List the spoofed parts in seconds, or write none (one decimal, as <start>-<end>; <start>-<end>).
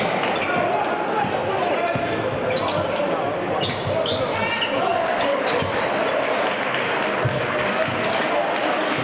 4.9-5.8; 7.3-8.3